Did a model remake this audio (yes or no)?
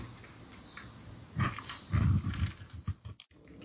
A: no